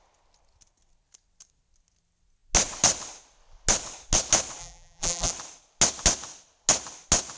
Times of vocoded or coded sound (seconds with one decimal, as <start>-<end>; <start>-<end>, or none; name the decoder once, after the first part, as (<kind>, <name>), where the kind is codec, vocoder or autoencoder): 4.6-5.3 (vocoder, BigVGAN v2)